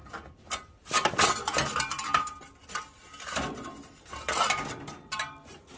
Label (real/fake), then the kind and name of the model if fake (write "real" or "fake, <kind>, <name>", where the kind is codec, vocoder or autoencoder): real